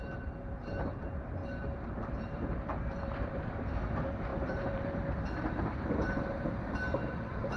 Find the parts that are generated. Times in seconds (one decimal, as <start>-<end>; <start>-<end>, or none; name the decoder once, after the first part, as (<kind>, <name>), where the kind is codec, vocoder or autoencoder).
0.0-1.4 (vocoder, BigVGAN v2); 2.1-7.6